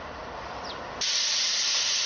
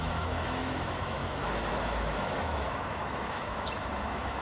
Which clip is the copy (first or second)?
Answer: second